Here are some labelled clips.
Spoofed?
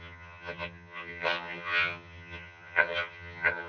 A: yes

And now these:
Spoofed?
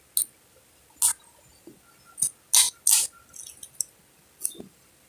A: no